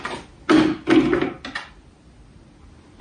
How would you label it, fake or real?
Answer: real